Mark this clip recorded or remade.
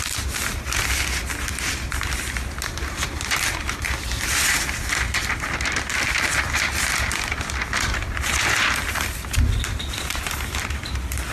recorded